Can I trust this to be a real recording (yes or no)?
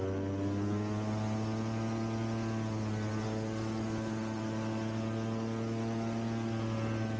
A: yes